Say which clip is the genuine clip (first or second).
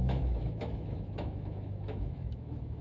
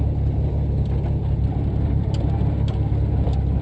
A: second